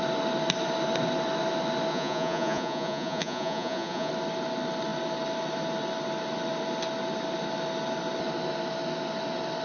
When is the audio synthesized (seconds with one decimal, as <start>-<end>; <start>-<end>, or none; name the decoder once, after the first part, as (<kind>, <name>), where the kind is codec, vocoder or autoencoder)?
1.9-4.1 (vocoder, Vocos)